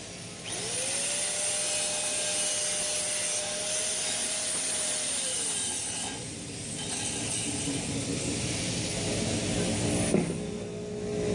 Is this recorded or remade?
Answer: recorded